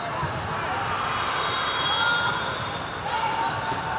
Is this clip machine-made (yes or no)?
no